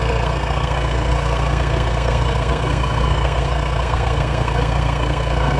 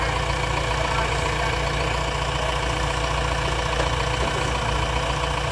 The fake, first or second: first